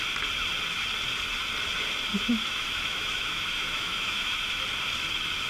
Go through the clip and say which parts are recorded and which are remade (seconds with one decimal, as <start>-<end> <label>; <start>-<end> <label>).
0.0-2.1 recorded; 2.1-4.6 remade; 4.6-5.5 recorded